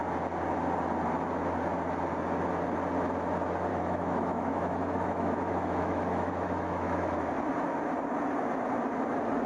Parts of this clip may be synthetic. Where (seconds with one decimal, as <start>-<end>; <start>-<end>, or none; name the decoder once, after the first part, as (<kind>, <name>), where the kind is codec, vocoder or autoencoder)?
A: 3.7-7.3 (autoencoder, DAC-VAE)